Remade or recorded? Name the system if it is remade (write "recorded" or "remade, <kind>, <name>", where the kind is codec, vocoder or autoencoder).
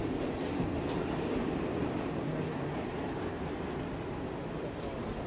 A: recorded